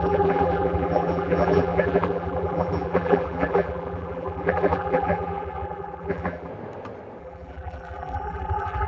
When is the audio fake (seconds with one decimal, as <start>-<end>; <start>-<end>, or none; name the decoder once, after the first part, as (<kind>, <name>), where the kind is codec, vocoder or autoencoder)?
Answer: 0.0-6.5 (vocoder, BigVGAN v2); 7.2-8.9